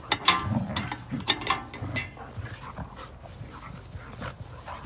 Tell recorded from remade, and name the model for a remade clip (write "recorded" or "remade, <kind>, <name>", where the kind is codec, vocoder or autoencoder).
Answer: recorded